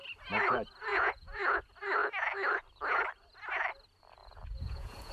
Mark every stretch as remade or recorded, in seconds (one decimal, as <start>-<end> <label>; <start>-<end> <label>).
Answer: 0.0-0.9 recorded; 0.9-1.6 remade; 1.6-4.2 recorded; 4.2-5.1 remade